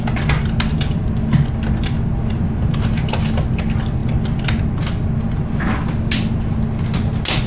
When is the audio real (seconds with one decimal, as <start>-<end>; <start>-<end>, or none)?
0.0-7.5